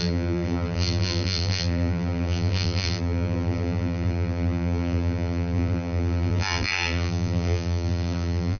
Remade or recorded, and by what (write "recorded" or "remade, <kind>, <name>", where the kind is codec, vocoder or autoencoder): remade, vocoder, BigVGAN v2